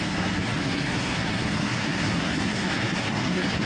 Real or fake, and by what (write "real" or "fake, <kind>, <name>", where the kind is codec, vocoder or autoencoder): fake, codec, SNAC